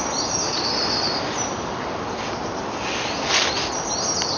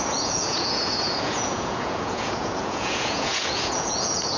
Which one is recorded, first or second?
first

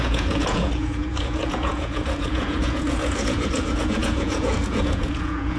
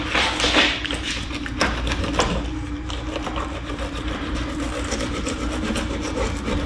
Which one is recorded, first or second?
second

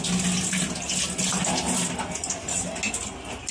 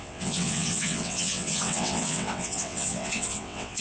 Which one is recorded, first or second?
first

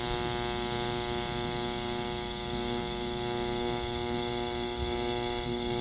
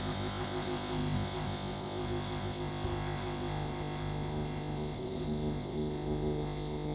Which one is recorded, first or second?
first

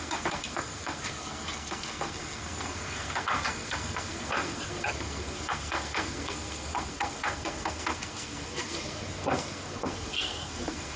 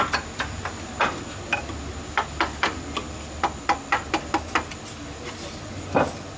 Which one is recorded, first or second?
second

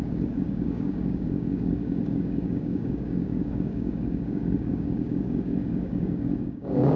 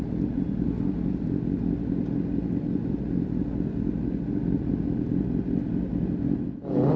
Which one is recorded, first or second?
second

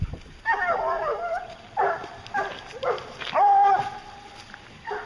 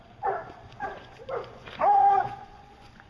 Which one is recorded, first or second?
first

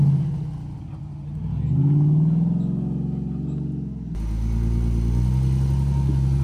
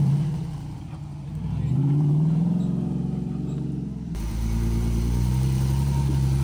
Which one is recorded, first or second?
first